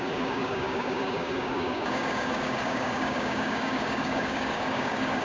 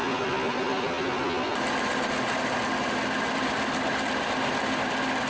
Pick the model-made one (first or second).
first